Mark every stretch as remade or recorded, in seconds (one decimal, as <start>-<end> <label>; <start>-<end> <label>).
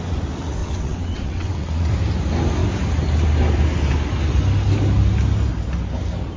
0.0-0.6 recorded; 0.6-1.9 remade; 1.9-6.4 recorded